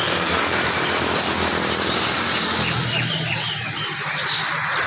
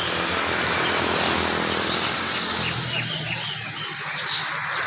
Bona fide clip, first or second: second